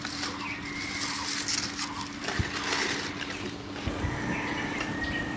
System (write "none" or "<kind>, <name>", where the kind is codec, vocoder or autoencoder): none